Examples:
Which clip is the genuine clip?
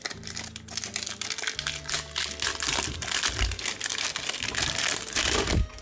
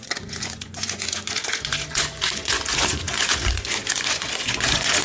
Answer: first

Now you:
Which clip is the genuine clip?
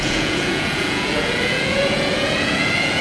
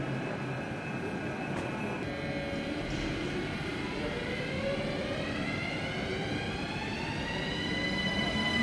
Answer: second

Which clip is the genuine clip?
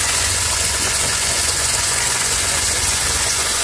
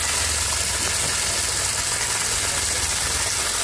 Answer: second